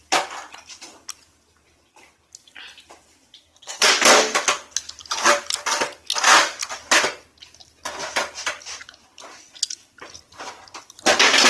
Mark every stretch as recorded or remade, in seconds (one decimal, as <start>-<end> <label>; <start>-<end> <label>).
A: 0.0-3.4 recorded; 3.4-3.9 remade; 3.9-11.5 recorded